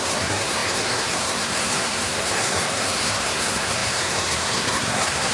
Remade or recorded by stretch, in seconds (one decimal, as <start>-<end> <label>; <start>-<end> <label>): 0.0-5.3 remade